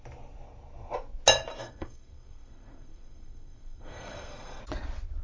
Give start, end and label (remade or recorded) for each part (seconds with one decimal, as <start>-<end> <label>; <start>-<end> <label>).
0.0-1.5 recorded; 1.5-4.6 remade; 4.6-5.2 recorded